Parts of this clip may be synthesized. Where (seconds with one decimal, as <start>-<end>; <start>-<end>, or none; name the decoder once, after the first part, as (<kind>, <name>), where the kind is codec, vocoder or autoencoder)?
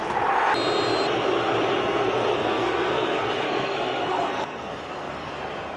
1.8-5.3 (codec, SNAC)